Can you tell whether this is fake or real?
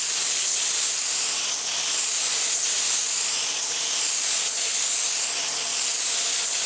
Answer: real